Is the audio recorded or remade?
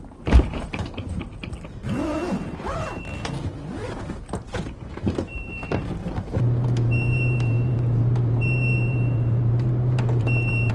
remade